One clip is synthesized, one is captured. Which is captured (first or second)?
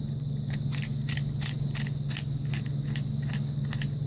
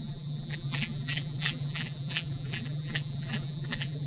first